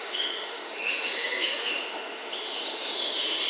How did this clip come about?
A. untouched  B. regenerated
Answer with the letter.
B